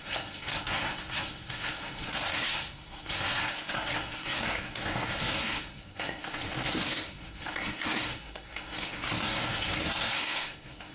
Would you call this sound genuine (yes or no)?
no